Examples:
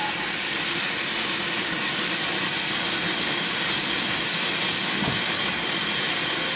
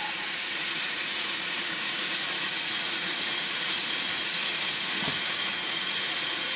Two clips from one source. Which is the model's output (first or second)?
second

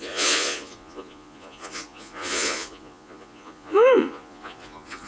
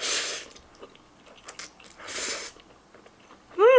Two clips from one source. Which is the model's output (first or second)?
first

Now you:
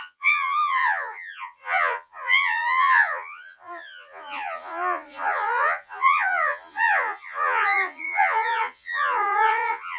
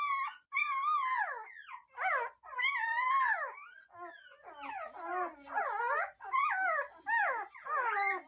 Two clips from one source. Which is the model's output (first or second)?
first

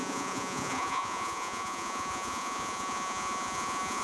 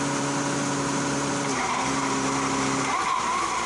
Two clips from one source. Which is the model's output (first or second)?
first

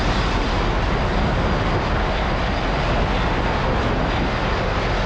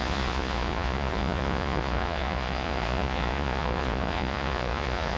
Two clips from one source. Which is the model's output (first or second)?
second